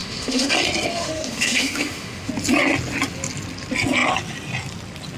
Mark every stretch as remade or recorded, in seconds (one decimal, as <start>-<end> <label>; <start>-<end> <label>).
0.0-0.5 remade; 0.5-0.9 recorded; 0.9-2.3 remade; 2.3-5.2 recorded